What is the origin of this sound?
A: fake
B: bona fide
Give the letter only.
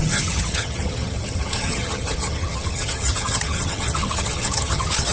A